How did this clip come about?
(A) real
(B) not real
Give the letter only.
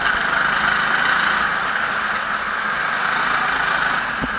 A